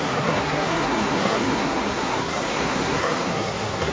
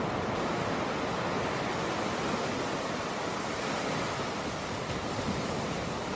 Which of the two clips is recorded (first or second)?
second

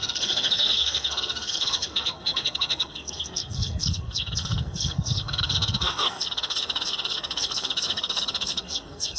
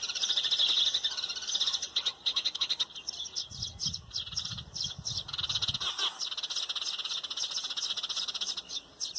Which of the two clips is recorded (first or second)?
second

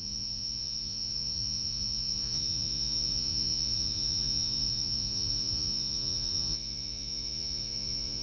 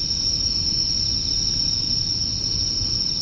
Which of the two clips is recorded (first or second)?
second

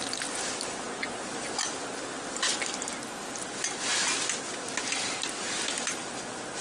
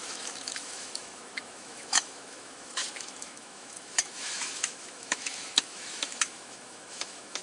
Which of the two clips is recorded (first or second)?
first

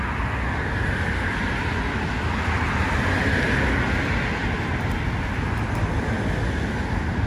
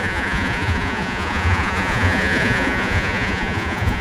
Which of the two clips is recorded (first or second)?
first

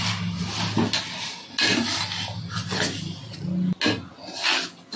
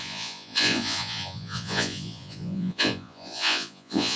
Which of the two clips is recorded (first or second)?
first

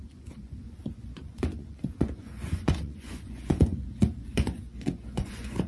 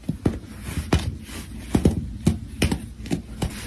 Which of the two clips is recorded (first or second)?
second